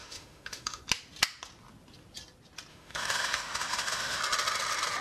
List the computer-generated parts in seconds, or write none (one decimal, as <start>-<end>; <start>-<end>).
0.0-0.8; 2.7-4.2